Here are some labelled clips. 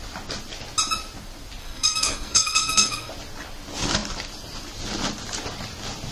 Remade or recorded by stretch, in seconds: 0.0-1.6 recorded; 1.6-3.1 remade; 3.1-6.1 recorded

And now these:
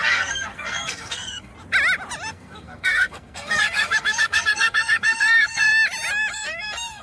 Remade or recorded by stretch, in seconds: 0.0-1.5 remade; 1.5-2.3 recorded; 2.3-5.7 remade; 5.7-6.3 recorded; 6.3-7.0 remade

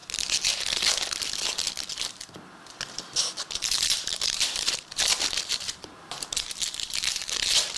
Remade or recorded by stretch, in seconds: 0.0-3.5 recorded; 3.5-7.8 remade

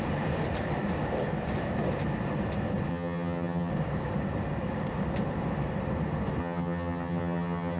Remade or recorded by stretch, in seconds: 0.0-2.9 recorded; 2.9-3.7 remade; 3.7-6.4 recorded; 6.4-7.8 remade

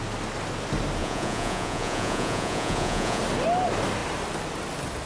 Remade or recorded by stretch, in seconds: 0.0-1.0 recorded; 1.0-3.2 remade; 3.2-5.1 recorded

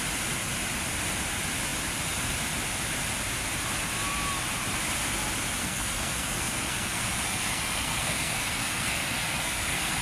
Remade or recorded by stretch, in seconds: 0.0-5.6 recorded; 5.6-10.0 remade